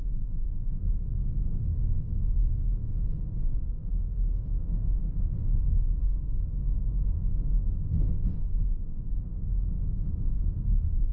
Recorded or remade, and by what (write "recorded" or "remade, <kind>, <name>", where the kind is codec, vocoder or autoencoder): remade, autoencoder, DAC-VAE